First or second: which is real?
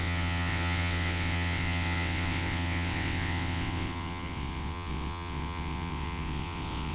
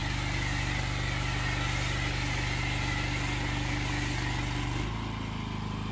second